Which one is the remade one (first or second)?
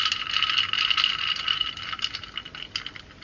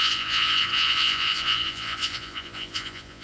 second